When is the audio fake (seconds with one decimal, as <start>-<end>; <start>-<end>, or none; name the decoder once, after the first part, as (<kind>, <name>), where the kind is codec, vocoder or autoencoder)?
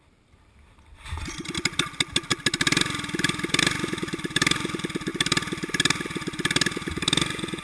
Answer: none